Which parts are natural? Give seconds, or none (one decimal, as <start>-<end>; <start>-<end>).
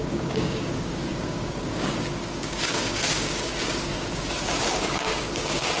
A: none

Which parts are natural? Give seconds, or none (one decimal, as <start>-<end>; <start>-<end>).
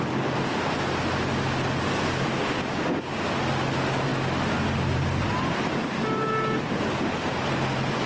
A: 0.0-2.4; 3.3-8.1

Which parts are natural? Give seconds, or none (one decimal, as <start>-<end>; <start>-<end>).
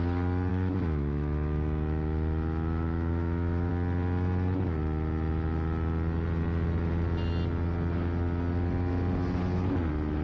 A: 0.0-0.5; 3.7-10.2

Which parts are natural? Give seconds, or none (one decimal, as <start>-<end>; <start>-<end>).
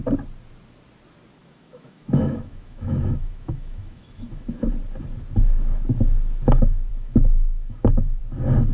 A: 0.0-1.4; 4.7-6.9; 8.2-8.7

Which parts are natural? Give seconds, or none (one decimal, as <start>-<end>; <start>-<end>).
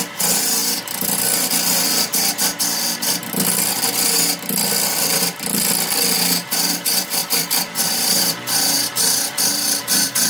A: 0.6-4.7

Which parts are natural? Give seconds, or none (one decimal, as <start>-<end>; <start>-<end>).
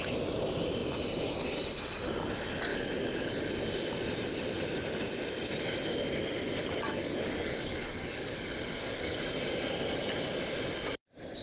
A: 0.0-2.7; 3.3-6.9; 9.2-11.4